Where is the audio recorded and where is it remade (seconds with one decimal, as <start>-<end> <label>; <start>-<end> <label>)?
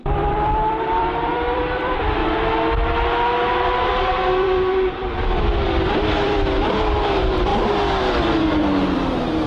0.0-2.2 remade; 2.2-3.9 recorded; 3.9-7.5 remade; 7.5-8.2 recorded; 8.2-9.5 remade